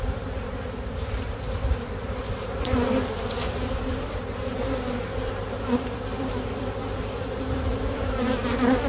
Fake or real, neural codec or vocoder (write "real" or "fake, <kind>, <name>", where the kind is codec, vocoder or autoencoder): fake, vocoder, BigVGAN v2